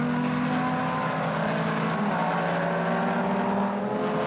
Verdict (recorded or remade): recorded